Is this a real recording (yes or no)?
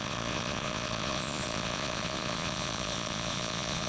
no